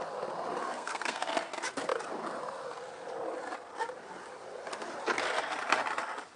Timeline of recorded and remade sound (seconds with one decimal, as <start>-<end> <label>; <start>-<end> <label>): 0.0-0.6 recorded; 0.6-1.3 remade; 1.3-6.4 recorded